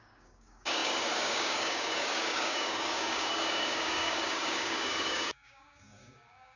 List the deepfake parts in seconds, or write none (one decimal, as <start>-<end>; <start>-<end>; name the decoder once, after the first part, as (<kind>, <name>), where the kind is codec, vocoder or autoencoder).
0.0-6.6 (codec, DAC)